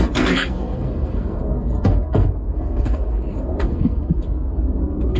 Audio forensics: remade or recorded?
remade